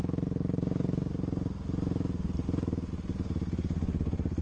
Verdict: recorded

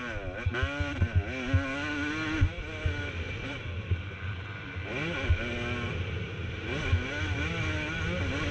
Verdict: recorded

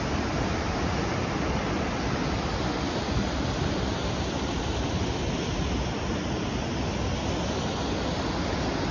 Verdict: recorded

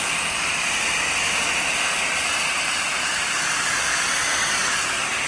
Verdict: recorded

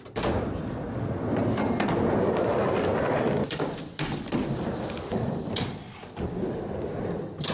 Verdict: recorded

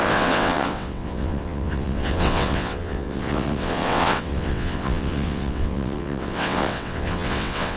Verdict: remade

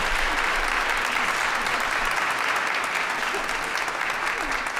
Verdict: recorded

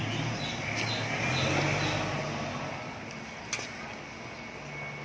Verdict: recorded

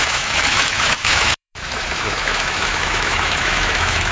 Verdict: remade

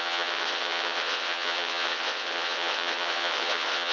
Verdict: remade